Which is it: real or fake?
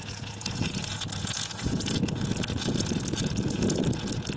fake